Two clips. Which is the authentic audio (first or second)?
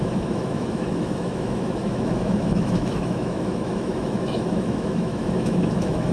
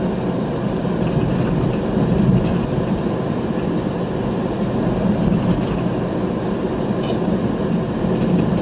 second